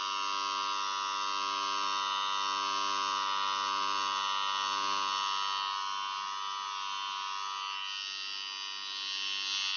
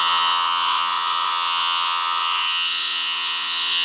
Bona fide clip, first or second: first